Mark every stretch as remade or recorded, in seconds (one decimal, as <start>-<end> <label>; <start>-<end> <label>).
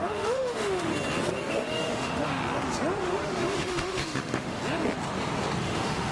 0.0-0.9 remade; 0.9-1.5 recorded; 1.5-2.4 remade; 2.4-3.0 recorded; 3.0-4.6 remade; 4.6-5.6 recorded; 5.6-6.1 remade